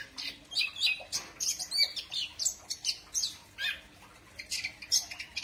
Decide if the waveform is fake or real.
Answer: real